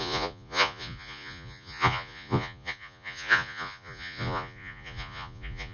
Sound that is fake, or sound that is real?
fake